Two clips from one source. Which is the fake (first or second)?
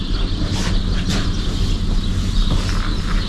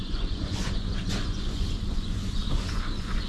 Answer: second